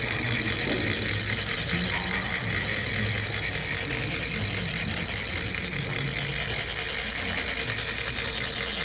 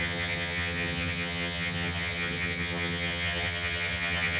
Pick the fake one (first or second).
second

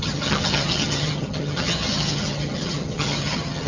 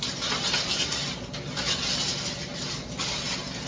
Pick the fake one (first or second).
first